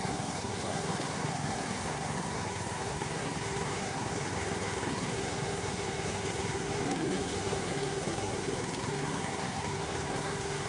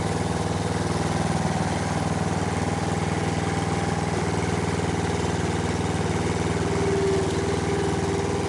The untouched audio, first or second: second